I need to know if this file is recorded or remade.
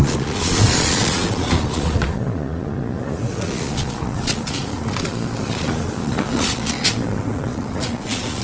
remade